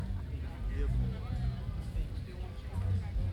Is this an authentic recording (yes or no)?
yes